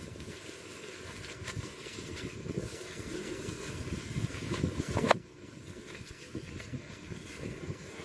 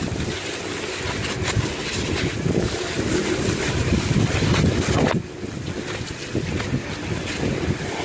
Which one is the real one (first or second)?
second